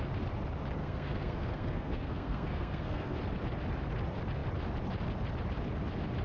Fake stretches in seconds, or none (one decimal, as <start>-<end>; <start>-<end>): 0.8-3.2